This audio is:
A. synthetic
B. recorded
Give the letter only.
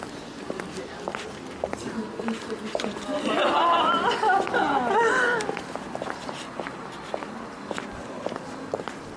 B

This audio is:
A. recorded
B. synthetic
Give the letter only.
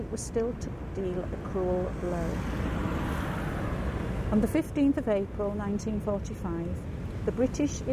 A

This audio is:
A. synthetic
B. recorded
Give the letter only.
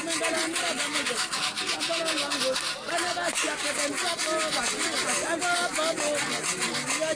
B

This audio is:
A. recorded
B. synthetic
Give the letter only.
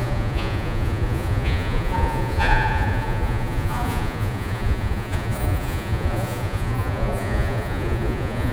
B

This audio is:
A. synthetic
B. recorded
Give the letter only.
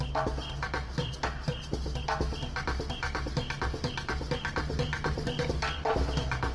B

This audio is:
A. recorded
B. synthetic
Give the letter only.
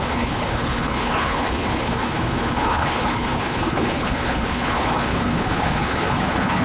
B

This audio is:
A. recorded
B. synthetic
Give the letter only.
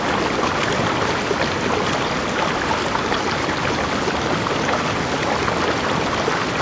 A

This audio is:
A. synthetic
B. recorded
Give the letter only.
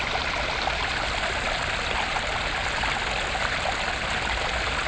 B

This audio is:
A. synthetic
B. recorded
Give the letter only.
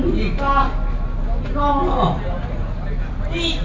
B